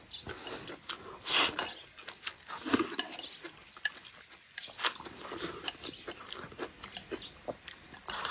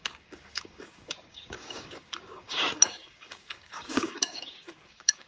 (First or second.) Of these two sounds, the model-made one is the second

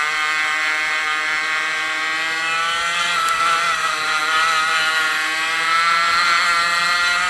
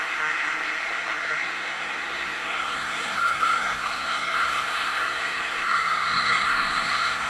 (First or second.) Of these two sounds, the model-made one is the second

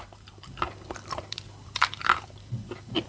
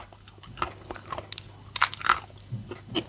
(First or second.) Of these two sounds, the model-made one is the first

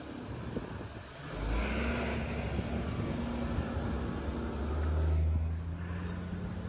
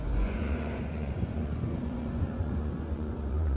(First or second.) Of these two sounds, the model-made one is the second